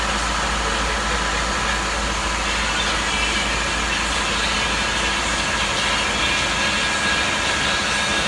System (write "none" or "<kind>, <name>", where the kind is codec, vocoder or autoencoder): none